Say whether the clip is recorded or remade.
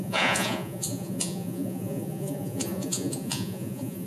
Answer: remade